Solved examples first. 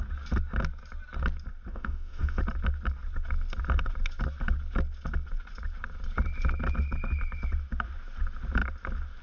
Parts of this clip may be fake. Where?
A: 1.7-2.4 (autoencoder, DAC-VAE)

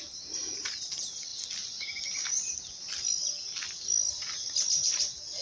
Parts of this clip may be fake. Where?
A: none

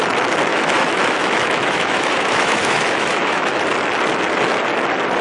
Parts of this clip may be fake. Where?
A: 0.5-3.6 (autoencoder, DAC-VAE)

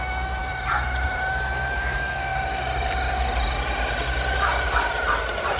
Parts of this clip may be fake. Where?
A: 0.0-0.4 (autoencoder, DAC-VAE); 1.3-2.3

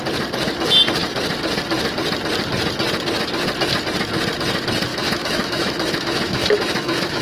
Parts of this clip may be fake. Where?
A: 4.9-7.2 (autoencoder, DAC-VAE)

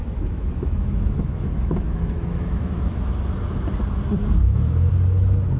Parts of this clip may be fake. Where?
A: 0.0-3.4 (autoencoder, DAC-VAE); 4.4-4.9